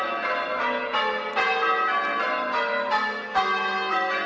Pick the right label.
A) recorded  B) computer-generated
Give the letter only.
A